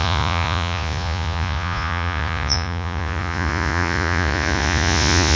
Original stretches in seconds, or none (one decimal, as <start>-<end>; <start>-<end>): none